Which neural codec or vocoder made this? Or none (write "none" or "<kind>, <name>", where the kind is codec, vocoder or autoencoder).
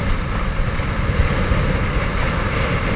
none